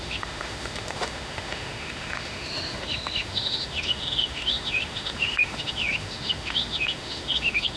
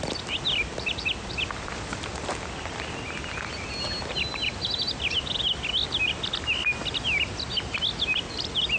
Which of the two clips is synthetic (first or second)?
first